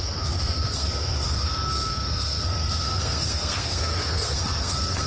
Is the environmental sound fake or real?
fake